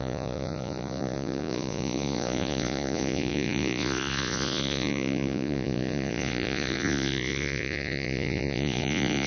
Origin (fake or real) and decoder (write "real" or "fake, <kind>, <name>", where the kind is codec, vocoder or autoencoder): fake, vocoder, Vocos